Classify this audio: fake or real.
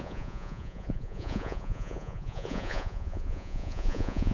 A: fake